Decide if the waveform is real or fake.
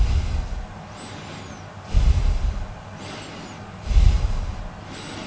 real